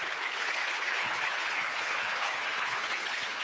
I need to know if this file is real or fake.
fake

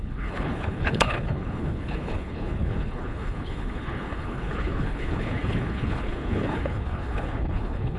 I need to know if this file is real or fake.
fake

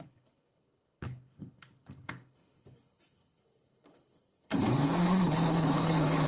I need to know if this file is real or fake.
fake